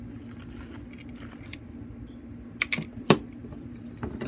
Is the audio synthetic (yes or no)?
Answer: no